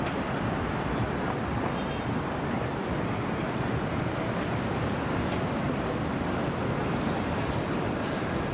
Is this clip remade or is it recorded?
recorded